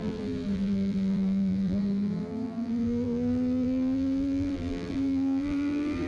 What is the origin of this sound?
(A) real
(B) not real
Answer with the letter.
B